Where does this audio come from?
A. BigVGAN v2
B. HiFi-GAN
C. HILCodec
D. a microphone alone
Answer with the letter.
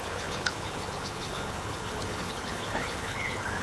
C